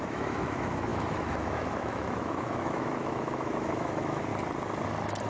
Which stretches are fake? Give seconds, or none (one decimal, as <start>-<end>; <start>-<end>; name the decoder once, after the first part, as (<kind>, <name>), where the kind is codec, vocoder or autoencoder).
0.0-4.3 (autoencoder, DAC-VAE)